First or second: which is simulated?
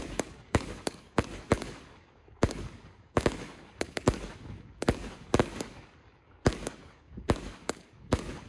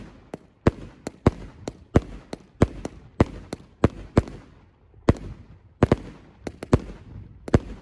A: first